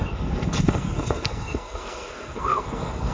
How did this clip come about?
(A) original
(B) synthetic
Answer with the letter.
B